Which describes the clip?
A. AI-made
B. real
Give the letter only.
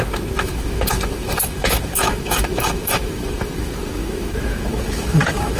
A